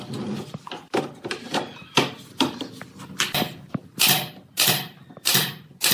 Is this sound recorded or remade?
recorded